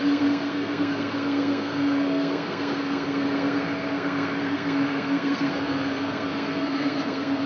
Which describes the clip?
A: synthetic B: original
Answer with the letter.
A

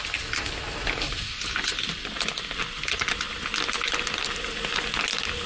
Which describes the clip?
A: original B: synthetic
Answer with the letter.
A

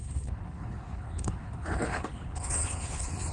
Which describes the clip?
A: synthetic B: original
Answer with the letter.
A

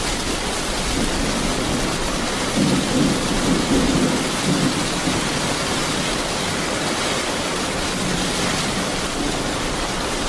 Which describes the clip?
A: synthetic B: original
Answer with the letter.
B